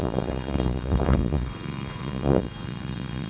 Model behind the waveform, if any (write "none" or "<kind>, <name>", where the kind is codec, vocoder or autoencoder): vocoder, Vocos